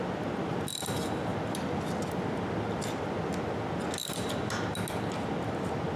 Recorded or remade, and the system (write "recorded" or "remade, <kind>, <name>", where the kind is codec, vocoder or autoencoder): recorded